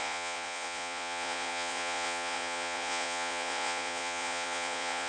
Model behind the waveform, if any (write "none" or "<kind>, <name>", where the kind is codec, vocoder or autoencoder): vocoder, Vocos